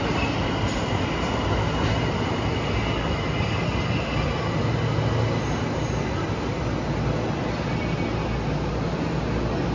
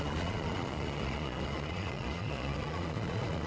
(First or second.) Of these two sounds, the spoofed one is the second